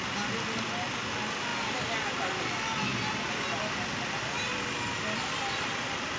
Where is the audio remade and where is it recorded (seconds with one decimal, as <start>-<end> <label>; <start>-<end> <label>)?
0.0-6.2 recorded